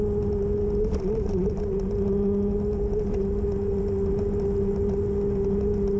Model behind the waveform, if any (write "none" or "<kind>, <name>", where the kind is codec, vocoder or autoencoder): none